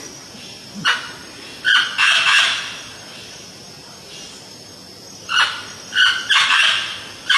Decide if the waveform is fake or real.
real